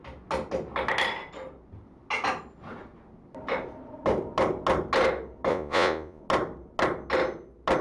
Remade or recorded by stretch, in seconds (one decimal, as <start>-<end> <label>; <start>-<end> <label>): 0.0-5.5 recorded; 5.5-6.2 remade; 6.2-7.8 recorded